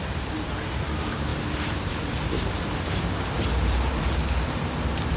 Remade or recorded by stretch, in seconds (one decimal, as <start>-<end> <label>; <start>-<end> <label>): 0.0-5.2 remade